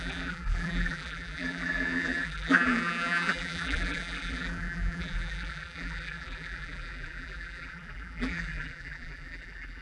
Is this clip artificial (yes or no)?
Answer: yes